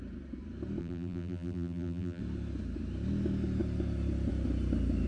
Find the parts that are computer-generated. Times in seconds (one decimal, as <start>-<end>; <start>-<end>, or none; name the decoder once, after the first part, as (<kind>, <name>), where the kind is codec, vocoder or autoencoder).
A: 0.8-2.2 (vocoder, BigVGAN v2)